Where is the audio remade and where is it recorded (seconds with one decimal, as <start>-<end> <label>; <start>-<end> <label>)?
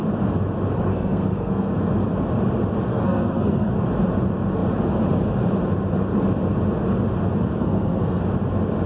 0.0-0.9 recorded; 0.9-1.7 remade; 1.7-2.9 recorded; 2.9-3.7 remade; 3.7-7.6 recorded; 7.6-8.2 remade; 8.2-8.9 recorded